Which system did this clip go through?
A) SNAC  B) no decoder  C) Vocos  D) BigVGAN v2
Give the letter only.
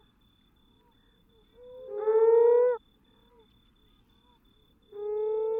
B